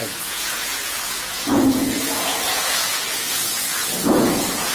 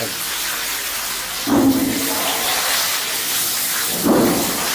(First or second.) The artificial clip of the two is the first